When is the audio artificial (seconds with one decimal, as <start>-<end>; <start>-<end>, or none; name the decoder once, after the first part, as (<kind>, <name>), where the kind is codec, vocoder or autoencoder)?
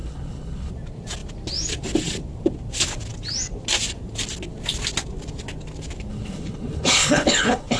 0.0-0.7 (codec, HILCodec); 6.1-7.8